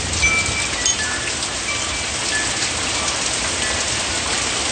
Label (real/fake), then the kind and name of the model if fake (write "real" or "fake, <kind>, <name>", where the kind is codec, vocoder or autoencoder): real